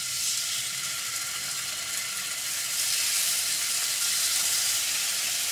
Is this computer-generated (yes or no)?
yes